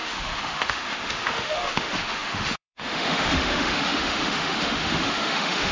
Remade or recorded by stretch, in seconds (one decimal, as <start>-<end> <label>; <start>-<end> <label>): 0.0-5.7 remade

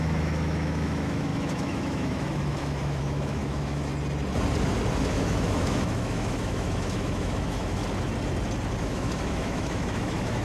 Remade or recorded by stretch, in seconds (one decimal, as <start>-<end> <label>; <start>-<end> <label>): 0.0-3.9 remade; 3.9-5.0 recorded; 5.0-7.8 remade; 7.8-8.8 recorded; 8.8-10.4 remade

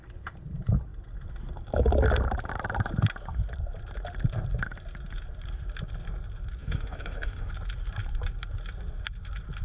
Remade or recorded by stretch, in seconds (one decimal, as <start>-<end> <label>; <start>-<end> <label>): 0.0-6.6 recorded; 6.6-7.5 remade; 7.5-9.6 recorded

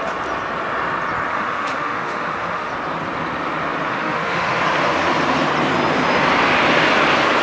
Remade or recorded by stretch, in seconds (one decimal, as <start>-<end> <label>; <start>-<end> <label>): 0.0-1.3 recorded; 1.3-2.7 remade; 2.7-3.9 recorded; 3.9-4.6 remade; 4.6-7.4 recorded

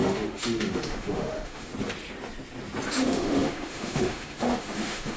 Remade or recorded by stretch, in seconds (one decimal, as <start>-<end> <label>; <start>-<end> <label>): 0.0-1.7 remade; 1.7-2.9 recorded; 2.9-5.2 remade